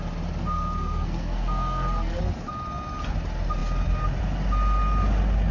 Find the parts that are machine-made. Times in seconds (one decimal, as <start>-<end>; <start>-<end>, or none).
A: 0.4-2.2